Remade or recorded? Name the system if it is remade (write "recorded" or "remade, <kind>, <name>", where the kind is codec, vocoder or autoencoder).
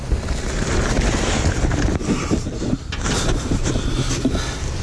recorded